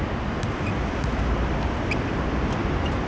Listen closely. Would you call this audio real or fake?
real